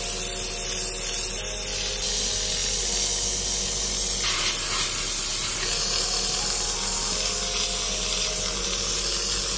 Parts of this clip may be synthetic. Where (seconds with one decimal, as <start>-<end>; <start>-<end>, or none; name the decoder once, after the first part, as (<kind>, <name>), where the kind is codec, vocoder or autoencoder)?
none